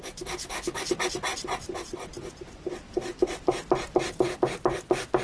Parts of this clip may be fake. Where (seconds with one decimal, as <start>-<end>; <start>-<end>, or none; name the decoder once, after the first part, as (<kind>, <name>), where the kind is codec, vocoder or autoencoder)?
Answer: none